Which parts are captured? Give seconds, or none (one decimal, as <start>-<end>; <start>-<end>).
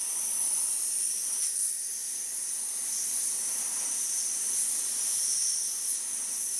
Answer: 0.0-6.6